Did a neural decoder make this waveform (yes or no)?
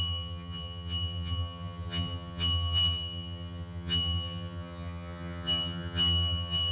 yes